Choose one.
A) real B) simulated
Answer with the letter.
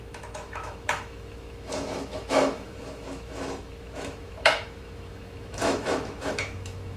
B